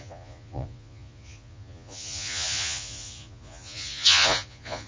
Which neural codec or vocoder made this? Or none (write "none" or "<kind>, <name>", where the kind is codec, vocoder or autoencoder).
vocoder, Vocos